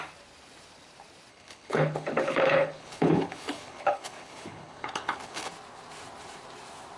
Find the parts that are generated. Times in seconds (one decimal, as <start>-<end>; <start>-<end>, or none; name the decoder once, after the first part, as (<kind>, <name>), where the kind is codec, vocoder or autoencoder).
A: 1.3-5.5 (codec, HILCodec)